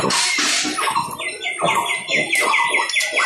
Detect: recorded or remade recorded